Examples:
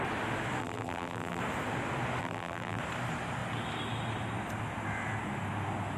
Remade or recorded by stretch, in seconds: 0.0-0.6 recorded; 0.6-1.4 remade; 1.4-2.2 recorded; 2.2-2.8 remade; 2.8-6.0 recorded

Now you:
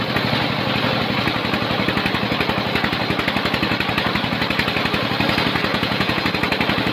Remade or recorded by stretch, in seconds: 0.0-5.7 recorded; 5.7-6.2 remade; 6.2-6.9 recorded

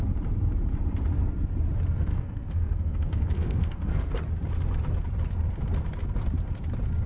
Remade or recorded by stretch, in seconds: 0.0-2.1 recorded; 2.1-4.1 remade; 4.1-7.1 recorded

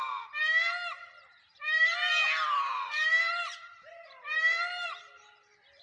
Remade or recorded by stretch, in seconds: 0.0-1.5 recorded; 1.5-5.0 remade; 5.0-5.8 recorded

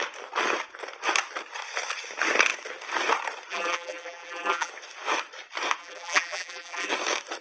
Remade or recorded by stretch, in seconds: 0.0-3.5 recorded; 3.5-4.7 remade; 4.7-5.8 recorded; 5.8-6.9 remade; 6.9-7.4 recorded

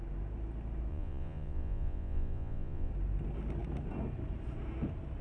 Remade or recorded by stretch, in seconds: 0.0-0.9 recorded; 0.9-2.9 remade; 2.9-5.2 recorded

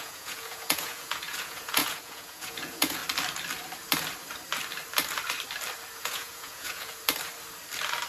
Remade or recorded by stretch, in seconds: 0.0-3.0 remade; 3.0-6.0 recorded; 6.0-7.0 remade; 7.0-8.1 recorded